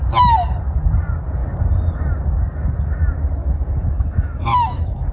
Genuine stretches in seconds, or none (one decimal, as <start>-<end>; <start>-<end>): 0.0-3.4